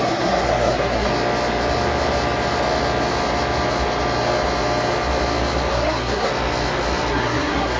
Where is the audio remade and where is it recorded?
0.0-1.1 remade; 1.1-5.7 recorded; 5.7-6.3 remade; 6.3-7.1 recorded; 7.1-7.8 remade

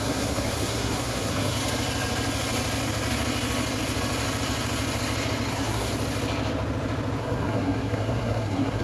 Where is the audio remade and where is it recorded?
0.0-1.6 remade; 1.6-5.5 recorded; 5.5-5.9 remade; 5.9-7.2 recorded; 7.2-8.8 remade

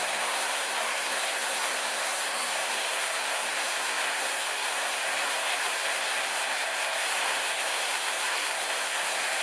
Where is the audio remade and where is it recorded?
0.0-9.4 remade

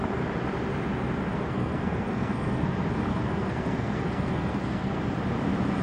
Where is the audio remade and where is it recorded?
0.0-1.3 recorded; 1.3-2.7 remade; 2.7-3.1 recorded; 3.1-5.0 remade; 5.0-5.8 recorded

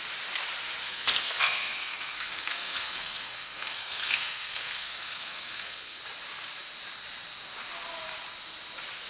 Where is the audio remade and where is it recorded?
0.0-0.8 recorded; 0.8-6.0 remade; 6.0-9.1 recorded

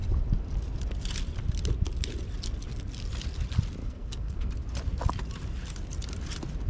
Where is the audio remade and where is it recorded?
0.0-3.8 recorded; 3.8-4.5 remade; 4.5-6.7 recorded

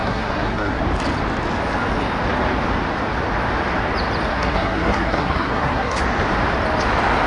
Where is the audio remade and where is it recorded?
0.0-0.8 remade; 0.8-4.3 recorded; 4.3-6.0 remade; 6.0-7.3 recorded